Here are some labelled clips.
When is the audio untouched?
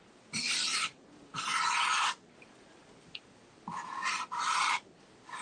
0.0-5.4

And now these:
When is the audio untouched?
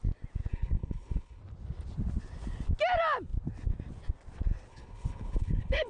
0.0-0.5; 1.4-4.7